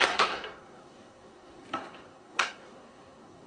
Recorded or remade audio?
remade